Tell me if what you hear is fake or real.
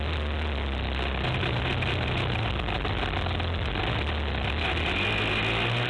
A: real